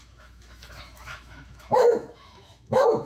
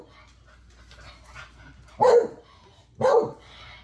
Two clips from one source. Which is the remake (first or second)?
first